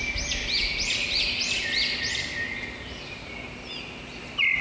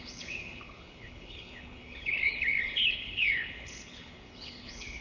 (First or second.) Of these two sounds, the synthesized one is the second